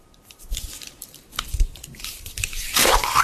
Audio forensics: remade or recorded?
remade